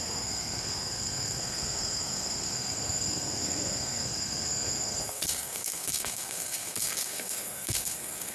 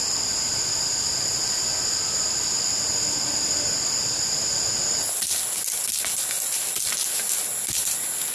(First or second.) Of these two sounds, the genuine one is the second